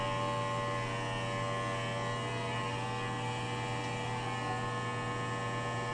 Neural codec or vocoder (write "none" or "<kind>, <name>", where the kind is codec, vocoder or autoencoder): none